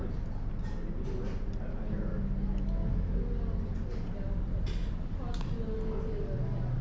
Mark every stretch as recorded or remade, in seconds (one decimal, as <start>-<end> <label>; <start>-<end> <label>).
0.0-6.8 recorded